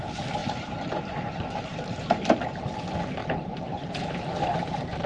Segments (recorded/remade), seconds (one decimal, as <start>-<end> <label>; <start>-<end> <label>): 0.0-0.4 recorded; 0.4-0.9 remade; 0.9-3.2 recorded; 3.2-5.1 remade